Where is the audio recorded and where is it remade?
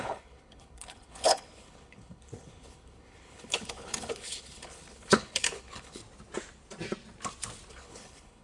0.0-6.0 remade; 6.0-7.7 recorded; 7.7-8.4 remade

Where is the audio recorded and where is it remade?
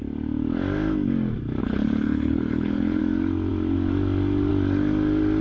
0.0-1.6 recorded; 1.6-3.0 remade; 3.0-5.4 recorded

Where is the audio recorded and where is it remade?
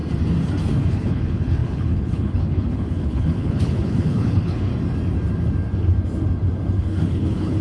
0.0-0.8 recorded; 0.8-4.7 remade; 4.7-6.8 recorded; 6.8-7.6 remade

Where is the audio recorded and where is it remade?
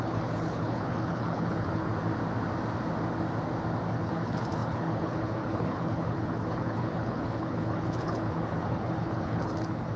0.0-1.9 remade; 1.9-3.9 recorded; 3.9-10.0 remade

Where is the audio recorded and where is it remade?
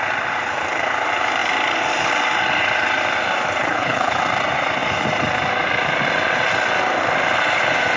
0.0-3.6 recorded; 3.6-4.2 remade; 4.2-8.0 recorded